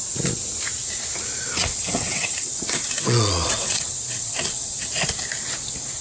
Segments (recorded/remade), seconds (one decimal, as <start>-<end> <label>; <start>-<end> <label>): 0.0-1.6 recorded; 1.6-4.9 remade; 4.9-6.0 recorded